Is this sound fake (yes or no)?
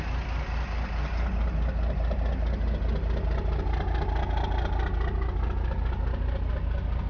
no